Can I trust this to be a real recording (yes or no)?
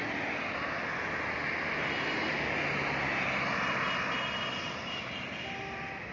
yes